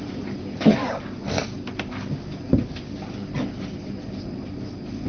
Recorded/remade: recorded